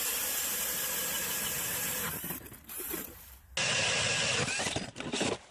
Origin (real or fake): real